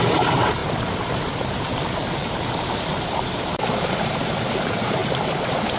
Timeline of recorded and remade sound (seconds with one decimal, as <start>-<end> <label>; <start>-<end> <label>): 0.0-5.8 remade